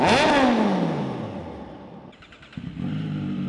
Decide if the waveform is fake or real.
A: real